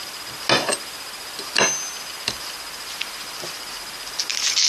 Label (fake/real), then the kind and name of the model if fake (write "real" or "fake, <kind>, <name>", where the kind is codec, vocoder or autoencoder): real